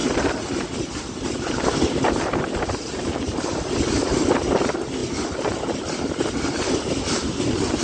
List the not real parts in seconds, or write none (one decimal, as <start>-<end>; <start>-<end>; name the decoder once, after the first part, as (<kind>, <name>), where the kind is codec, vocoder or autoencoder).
none